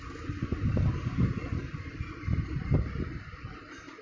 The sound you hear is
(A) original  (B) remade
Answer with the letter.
A